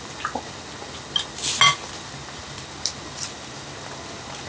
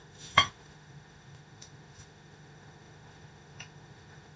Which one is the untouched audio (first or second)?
first